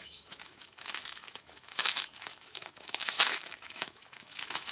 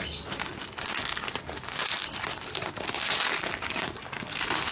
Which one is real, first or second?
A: second